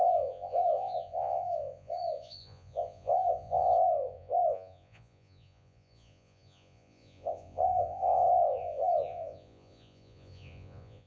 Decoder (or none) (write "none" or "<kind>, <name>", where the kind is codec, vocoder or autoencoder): vocoder, Vocos